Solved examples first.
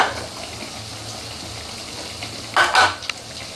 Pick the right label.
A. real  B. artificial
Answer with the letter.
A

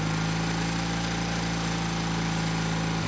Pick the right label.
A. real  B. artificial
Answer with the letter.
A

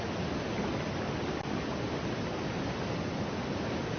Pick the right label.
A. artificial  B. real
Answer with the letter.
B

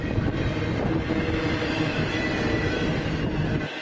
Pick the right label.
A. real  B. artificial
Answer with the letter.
A